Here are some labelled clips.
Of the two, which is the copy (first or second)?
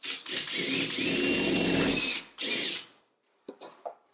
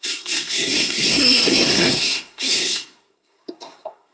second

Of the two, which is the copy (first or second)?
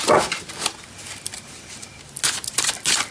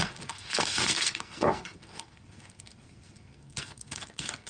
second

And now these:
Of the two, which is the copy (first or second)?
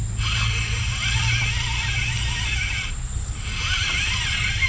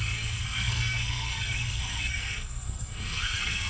second